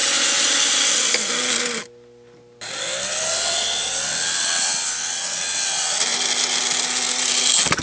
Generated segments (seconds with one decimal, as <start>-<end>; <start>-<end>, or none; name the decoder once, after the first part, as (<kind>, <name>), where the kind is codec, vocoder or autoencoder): none